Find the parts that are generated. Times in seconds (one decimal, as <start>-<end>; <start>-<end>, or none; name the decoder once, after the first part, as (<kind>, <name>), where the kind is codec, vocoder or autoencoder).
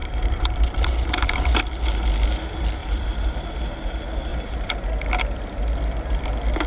0.0-1.6 (vocoder, BigVGAN v2); 2.8-3.5; 4.3-4.9